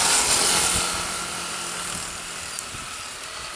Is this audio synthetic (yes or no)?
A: no